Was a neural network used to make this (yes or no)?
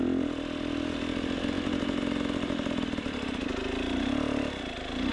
no